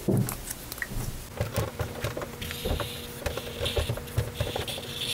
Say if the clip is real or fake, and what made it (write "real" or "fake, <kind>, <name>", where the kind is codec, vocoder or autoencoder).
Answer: real